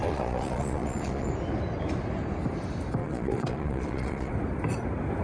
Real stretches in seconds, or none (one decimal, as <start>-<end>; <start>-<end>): 1.3-3.0; 4.3-5.2